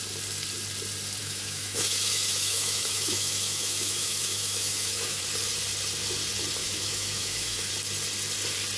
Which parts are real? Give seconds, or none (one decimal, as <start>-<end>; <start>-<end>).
0.0-1.2; 5.2-6.6; 7.7-8.8